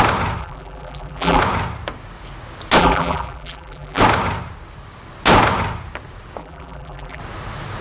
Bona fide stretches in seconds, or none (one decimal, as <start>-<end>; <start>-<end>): 0.0-0.4; 1.4-2.8; 4.0-6.4; 7.2-7.8

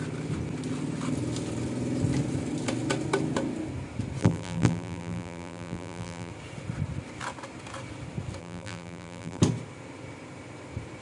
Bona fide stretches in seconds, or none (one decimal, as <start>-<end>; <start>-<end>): 0.0-4.2; 6.3-8.4; 9.4-11.0

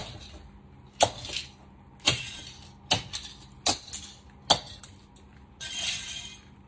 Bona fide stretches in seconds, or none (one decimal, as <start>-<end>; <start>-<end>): 0.0-5.3; 6.2-6.7

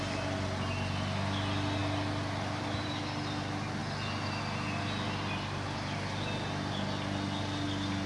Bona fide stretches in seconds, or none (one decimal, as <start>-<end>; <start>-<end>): 0.0-8.1

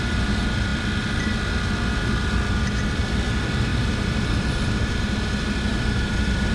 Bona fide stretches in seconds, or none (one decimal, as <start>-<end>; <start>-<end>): 0.0-3.7; 4.6-5.7

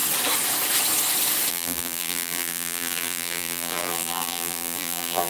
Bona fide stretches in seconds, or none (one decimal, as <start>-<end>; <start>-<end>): 0.0-1.5

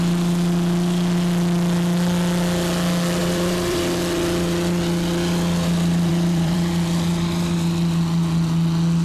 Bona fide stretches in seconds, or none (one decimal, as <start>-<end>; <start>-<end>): 0.0-3.2; 3.8-6.1; 6.7-9.0